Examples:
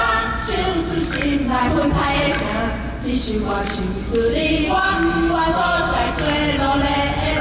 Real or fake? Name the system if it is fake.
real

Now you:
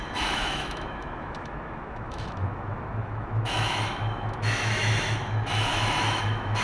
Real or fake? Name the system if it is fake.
fake, autoencoder, DAC-VAE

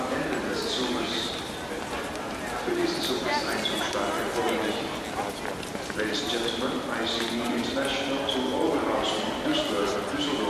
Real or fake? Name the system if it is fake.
real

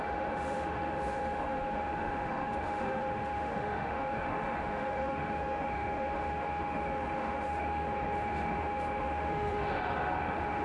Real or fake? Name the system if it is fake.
fake, autoencoder, DAC-VAE